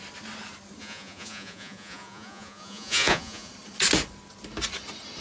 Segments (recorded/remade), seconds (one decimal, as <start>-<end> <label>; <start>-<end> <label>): 0.0-0.8 recorded; 0.8-3.5 remade; 3.5-5.2 recorded